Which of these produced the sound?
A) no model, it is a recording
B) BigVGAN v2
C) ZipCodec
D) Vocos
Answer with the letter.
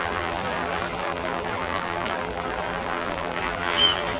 B